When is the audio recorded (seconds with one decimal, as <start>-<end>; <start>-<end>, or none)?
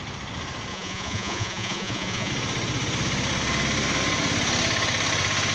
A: 0.0-0.7; 2.3-5.5